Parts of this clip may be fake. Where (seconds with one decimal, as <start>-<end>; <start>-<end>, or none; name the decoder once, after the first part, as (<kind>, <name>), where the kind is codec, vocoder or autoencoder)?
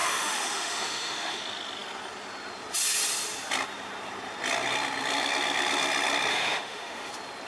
0.0-1.4 (autoencoder, DAC-VAE); 6.3-7.1